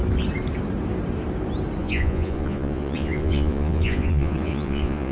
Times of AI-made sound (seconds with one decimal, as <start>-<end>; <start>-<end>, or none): 1.8-5.1